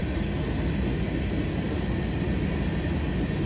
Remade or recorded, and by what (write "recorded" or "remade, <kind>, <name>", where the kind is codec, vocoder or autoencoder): recorded